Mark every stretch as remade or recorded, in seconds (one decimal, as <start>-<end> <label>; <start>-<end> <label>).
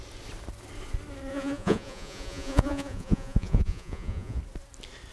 0.0-1.3 recorded; 1.3-4.4 remade; 4.4-5.1 recorded